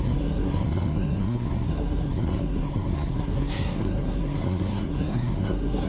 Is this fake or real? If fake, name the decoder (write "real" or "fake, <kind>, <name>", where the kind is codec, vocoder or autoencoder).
fake, codec, SNAC